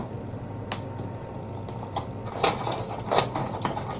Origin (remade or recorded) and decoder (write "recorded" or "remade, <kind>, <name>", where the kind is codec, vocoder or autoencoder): recorded